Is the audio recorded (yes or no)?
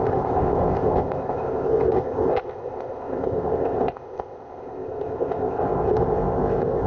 no